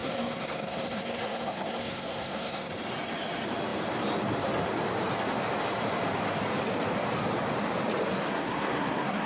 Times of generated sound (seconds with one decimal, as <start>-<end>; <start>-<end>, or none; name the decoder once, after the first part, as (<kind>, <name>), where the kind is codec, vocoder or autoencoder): 0.0-2.7 (codec, SNAC); 8.2-9.3